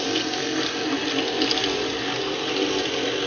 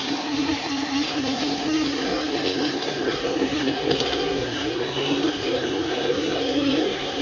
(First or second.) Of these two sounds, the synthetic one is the second